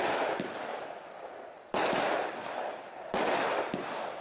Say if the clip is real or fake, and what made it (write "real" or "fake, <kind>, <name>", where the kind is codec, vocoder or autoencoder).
real